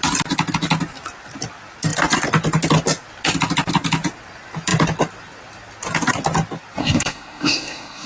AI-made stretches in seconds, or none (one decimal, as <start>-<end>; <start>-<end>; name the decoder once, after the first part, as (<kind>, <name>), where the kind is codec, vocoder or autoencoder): 6.8-8.1 (codec, SNAC)